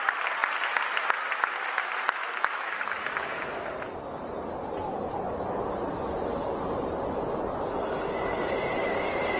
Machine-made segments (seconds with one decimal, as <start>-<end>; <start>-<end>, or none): 2.2-3.5